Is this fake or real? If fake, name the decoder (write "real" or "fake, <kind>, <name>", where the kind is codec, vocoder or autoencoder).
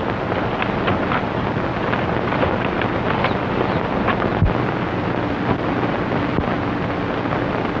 real